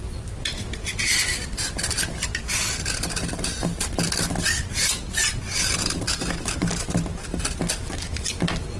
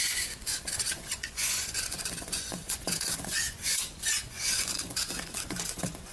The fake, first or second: second